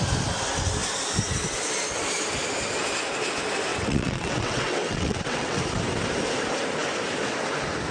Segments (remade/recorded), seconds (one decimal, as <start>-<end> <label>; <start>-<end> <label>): 0.0-3.7 recorded; 3.7-5.6 remade; 5.6-7.9 recorded